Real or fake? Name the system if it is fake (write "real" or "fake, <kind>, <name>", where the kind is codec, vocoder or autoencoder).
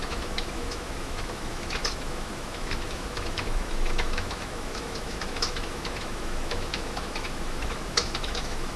fake, autoencoder, DAC-VAE